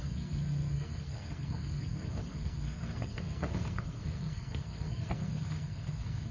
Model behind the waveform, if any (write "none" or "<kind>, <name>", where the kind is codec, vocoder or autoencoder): codec, SNAC